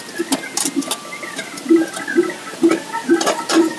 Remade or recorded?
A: recorded